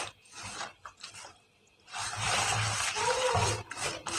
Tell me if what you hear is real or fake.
real